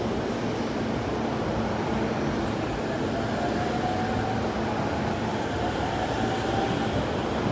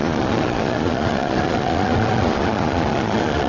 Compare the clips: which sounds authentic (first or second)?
first